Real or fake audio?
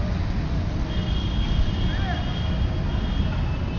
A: real